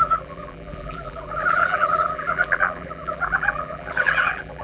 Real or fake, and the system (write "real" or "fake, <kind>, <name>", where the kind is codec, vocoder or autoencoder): fake, vocoder, BigVGAN v2